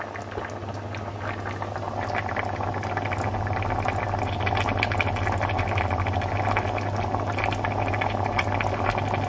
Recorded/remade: recorded